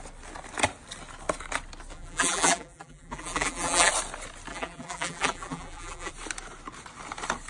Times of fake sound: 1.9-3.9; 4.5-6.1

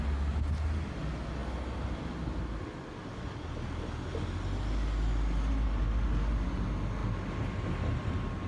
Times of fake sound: none

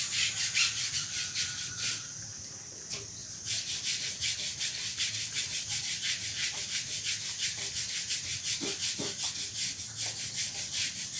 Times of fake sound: 0.0-8.3; 10.2-11.2

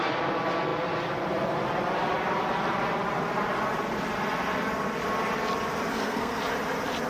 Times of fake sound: 5.9-6.4

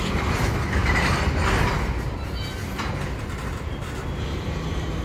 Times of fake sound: 0.8-1.7

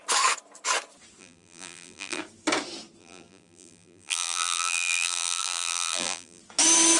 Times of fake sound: 1.2-2.2; 3.0-6.4

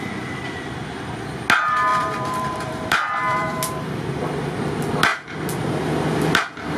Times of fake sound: 1.9-4.6

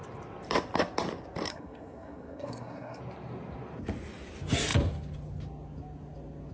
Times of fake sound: 1.5-3.0